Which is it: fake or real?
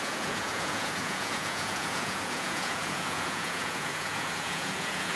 fake